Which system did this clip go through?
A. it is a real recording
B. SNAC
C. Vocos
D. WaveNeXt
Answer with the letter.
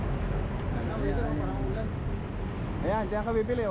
A